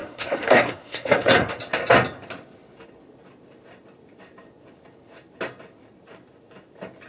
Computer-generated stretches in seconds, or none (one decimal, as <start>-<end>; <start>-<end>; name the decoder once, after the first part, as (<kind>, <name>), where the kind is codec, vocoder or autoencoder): 0.0-1.6 (codec, SNAC)